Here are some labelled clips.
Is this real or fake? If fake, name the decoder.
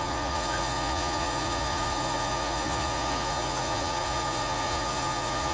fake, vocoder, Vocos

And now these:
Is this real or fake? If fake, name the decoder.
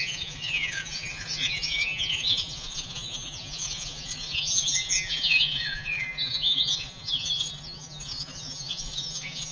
fake, vocoder, Vocos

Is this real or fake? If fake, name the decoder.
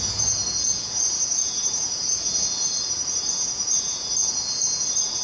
fake, vocoder, Vocos